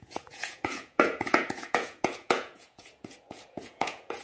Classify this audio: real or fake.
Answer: fake